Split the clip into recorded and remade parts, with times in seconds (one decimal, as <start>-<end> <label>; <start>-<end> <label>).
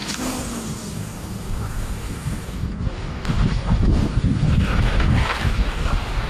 0.0-6.3 remade